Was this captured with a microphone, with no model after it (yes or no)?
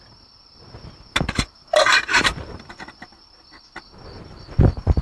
yes